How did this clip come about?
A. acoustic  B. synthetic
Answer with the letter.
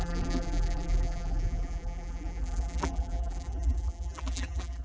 B